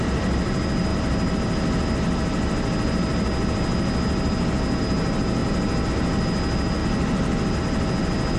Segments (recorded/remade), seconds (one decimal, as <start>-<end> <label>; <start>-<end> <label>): 0.0-8.4 recorded